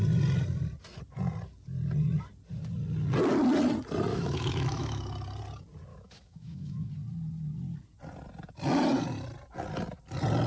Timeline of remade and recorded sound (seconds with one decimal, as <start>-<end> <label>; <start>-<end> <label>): 0.0-4.1 recorded; 4.1-5.0 remade; 5.0-5.9 recorded; 5.9-6.9 remade; 6.9-10.5 recorded

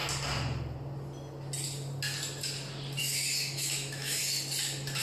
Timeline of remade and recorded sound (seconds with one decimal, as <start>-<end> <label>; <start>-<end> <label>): 0.0-3.0 recorded; 3.0-4.2 remade; 4.2-5.0 recorded